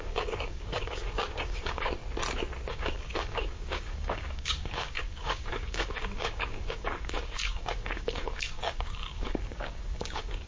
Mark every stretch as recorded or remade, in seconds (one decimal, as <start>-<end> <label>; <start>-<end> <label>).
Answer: 0.0-2.0 remade; 2.0-2.7 recorded; 2.7-10.5 remade